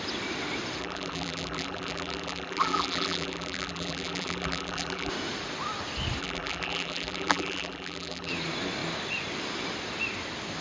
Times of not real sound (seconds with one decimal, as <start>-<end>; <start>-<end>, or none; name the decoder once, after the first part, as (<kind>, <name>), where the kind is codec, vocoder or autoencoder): 0.8-5.1 (vocoder, BigVGAN v2); 6.2-8.3